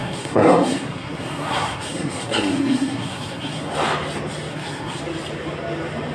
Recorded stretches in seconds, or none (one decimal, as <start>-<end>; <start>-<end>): 3.7-4.5; 5.0-6.1